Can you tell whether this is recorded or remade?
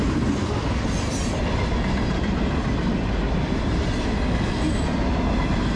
recorded